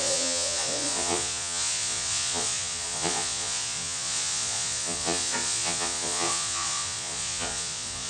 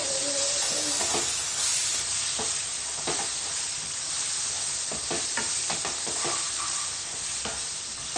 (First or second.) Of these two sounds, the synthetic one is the first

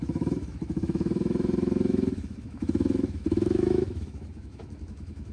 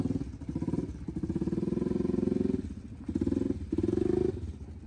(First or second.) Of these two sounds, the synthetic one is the first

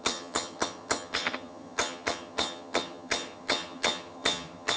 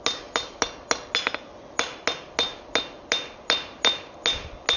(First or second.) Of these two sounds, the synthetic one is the first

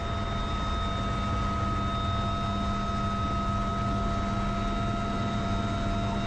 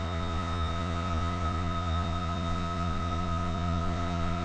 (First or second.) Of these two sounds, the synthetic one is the second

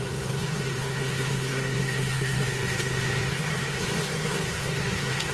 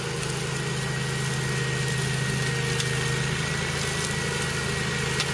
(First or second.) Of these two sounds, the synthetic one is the first